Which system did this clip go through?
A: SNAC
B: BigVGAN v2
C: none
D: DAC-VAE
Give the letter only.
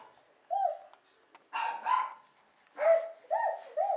C